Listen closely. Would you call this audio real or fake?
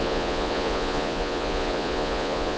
fake